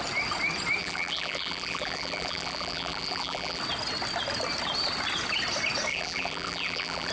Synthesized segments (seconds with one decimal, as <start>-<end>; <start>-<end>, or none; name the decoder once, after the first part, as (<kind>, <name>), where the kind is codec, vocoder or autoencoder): 0.8-3.6 (vocoder, BigVGAN v2); 5.9-7.1

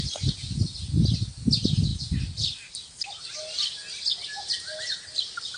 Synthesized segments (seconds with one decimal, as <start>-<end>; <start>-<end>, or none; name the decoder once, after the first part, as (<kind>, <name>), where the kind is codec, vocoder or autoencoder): none

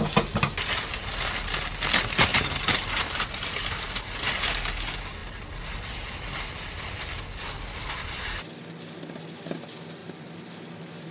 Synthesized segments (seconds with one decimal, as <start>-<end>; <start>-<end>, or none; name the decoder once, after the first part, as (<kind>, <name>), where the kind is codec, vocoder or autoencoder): 2.3-4.0 (vocoder, BigVGAN v2); 10.0-11.1

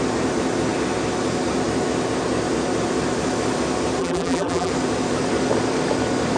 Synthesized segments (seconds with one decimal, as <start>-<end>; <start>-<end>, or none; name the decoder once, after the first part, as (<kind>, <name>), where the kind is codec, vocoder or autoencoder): 4.0-4.7 (vocoder, BigVGAN v2)

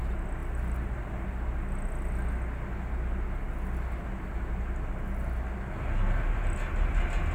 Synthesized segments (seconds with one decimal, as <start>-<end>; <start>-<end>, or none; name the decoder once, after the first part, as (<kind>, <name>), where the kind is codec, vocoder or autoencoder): none

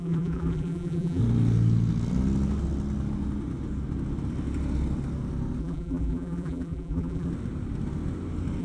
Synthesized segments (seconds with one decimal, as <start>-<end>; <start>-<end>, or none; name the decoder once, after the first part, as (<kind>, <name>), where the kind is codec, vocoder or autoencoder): 0.0-1.2 (vocoder, BigVGAN v2); 5.6-7.3

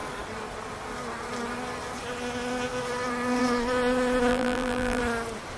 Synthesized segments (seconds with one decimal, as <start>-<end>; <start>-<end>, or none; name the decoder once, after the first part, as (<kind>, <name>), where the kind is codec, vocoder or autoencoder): 4.3-5.0 (vocoder, BigVGAN v2)